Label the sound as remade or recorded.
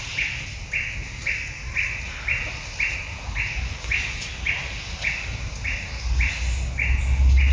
recorded